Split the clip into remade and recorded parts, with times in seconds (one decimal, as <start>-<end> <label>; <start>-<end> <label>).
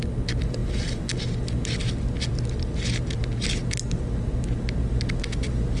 0.0-5.8 recorded